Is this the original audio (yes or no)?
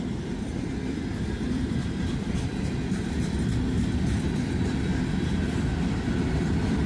no